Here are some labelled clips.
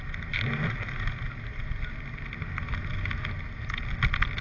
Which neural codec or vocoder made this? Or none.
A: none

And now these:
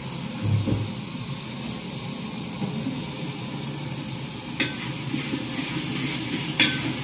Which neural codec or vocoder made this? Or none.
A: none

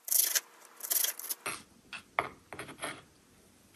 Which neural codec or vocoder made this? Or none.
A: none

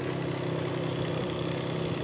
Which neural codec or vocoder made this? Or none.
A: none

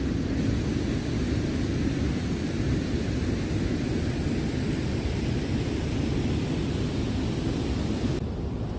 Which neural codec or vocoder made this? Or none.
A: none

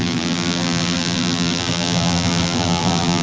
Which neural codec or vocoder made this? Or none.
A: vocoder, BigVGAN v2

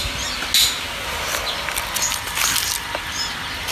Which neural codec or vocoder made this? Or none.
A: none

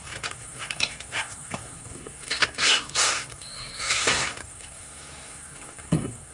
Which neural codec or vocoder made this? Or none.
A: codec, SNAC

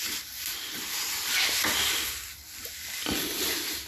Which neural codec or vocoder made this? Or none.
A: none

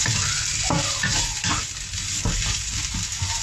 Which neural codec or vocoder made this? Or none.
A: none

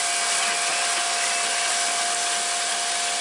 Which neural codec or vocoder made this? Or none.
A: none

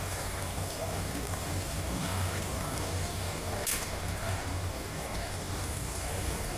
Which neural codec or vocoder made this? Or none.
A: codec, DAC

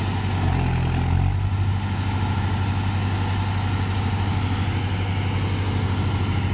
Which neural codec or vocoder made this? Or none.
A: none